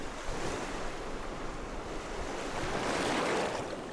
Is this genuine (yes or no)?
yes